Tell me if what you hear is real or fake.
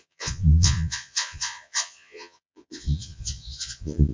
fake